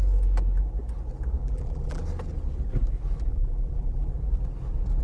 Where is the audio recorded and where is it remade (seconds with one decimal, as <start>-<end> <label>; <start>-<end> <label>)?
0.0-1.4 recorded; 1.4-2.0 remade; 2.0-3.3 recorded; 3.3-4.1 remade; 4.1-5.0 recorded